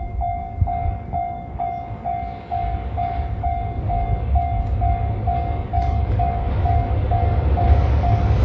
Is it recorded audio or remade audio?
remade